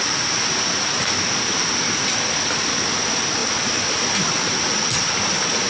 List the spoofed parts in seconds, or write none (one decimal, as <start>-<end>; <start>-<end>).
none